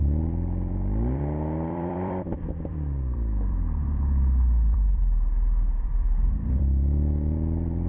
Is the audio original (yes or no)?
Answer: no